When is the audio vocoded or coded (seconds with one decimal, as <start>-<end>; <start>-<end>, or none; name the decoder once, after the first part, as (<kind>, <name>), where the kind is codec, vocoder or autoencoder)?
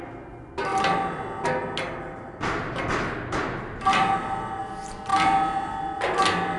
none